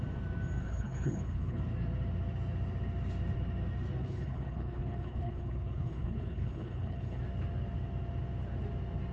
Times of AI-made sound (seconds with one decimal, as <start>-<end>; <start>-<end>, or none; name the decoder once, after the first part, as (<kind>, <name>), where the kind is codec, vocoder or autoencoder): 0.6-1.6 (codec, HILCodec); 4.0-7.2